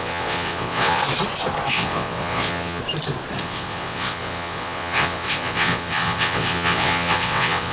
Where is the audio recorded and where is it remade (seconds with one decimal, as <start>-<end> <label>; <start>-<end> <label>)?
0.0-1.0 remade; 1.0-1.7 recorded; 1.7-2.8 remade; 2.8-3.4 recorded; 3.4-7.7 remade